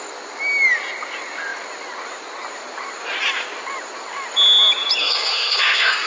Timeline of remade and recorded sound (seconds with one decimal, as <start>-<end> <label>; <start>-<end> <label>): 0.0-5.0 recorded; 5.0-6.1 remade